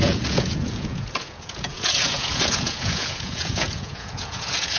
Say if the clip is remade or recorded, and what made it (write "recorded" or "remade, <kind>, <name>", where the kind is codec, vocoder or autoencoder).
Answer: remade, vocoder, Vocos